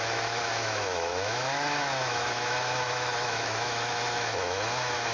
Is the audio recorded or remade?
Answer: remade